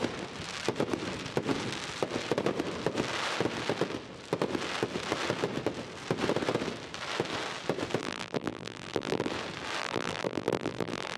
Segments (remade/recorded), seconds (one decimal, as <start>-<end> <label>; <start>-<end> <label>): 0.0-8.0 recorded; 8.0-9.3 remade; 9.3-9.8 recorded; 9.8-11.2 remade